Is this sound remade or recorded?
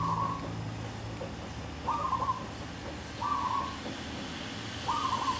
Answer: recorded